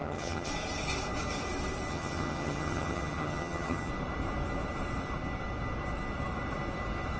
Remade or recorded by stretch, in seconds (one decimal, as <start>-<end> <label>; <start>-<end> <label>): 0.0-0.5 remade; 0.5-1.9 recorded; 1.9-3.9 remade; 3.9-7.2 recorded